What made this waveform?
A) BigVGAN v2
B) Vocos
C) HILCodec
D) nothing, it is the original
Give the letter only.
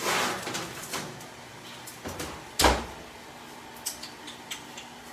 D